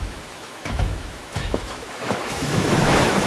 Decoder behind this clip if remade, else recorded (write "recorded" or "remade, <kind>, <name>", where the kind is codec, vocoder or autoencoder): remade, autoencoder, DAC-VAE